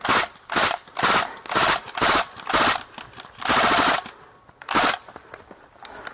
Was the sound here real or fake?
real